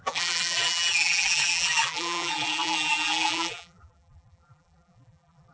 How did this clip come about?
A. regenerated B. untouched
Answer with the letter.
A